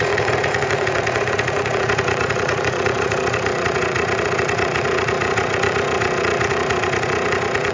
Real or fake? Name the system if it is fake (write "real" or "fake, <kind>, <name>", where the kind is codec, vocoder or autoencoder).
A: fake, vocoder, Vocos